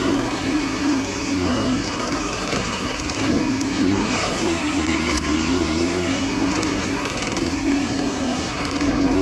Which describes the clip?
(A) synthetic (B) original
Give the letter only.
A